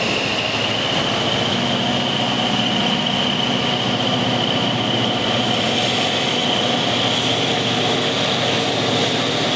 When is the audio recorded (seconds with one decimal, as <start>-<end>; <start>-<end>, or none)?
0.0-9.6